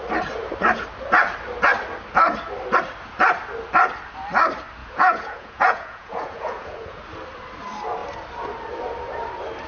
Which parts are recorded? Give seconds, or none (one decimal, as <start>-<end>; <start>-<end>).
0.0-4.8; 7.0-9.7